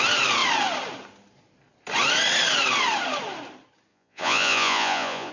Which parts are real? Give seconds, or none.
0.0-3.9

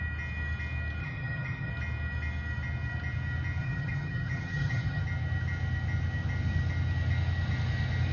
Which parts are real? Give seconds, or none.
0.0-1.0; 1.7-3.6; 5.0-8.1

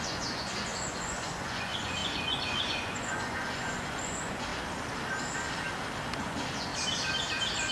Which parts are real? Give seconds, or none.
4.5-6.2; 6.7-7.7

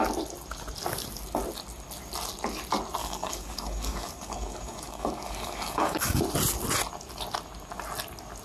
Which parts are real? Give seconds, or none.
0.0-3.0; 6.2-8.4

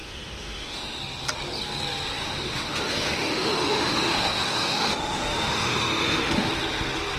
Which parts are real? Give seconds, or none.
1.0-2.2; 6.5-7.2

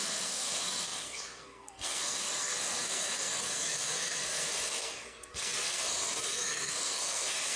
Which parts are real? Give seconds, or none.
none